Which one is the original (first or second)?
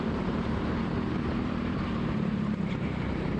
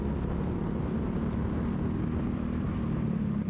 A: second